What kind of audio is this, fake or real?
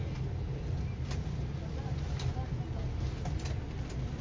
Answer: real